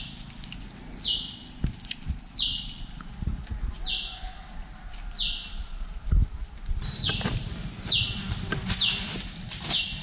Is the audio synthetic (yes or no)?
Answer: no